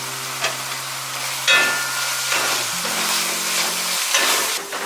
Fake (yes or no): no